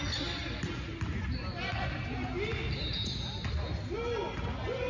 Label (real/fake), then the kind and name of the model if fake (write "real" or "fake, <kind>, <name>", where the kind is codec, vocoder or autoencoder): real